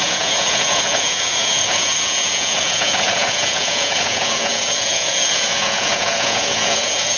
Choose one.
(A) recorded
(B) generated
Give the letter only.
B